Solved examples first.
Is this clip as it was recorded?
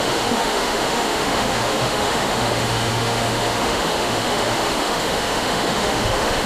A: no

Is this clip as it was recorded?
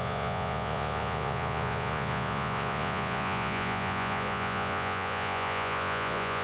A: no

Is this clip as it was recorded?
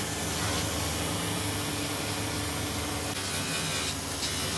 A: yes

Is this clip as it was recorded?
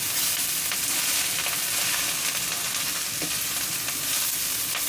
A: yes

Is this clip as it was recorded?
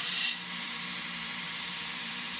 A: no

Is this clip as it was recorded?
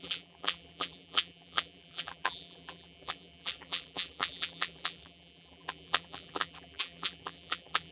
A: no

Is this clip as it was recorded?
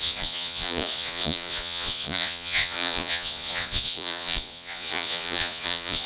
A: no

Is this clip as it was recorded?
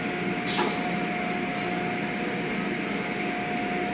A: yes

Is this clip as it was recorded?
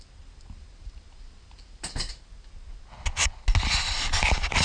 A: yes